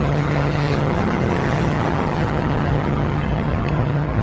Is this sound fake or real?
fake